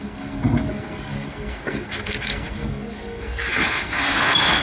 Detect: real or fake fake